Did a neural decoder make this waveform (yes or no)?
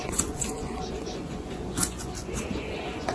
yes